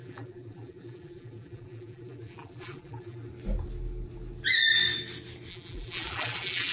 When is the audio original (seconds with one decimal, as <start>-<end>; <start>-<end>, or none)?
3.3-5.5